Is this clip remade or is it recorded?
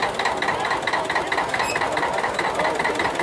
recorded